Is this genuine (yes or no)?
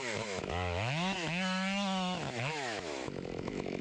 no